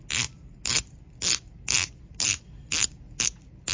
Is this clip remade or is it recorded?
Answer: recorded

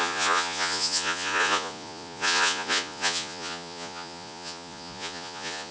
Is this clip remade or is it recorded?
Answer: remade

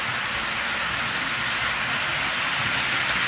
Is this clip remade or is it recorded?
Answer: recorded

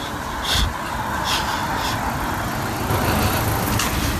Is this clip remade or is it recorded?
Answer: recorded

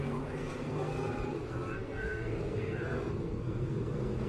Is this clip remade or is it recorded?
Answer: remade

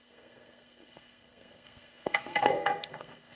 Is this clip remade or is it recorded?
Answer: remade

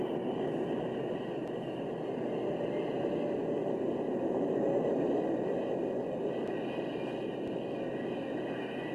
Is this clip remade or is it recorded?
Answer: recorded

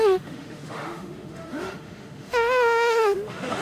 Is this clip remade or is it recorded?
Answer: remade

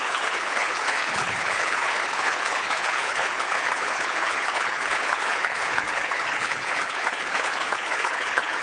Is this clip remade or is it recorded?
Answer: remade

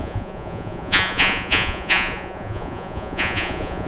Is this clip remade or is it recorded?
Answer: remade